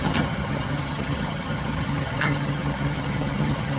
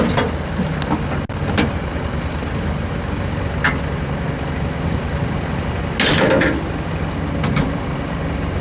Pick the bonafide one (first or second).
second